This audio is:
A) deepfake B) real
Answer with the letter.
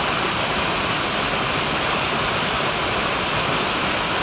B